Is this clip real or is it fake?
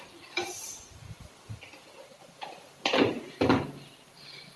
real